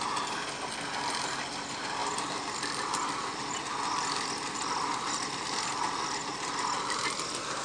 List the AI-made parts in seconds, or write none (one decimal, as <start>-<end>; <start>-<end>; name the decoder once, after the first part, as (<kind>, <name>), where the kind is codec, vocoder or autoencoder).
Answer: 2.0-6.2 (vocoder, BigVGAN v2)